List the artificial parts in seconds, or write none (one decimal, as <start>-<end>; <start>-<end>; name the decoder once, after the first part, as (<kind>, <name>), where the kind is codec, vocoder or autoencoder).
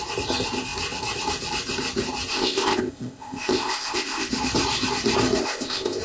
2.3-4.3 (codec, ZipCodec); 5.4-6.0